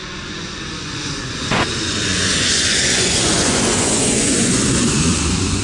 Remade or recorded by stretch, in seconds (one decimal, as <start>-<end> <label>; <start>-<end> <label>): 0.0-5.6 remade